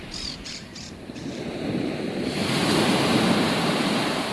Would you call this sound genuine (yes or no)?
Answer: no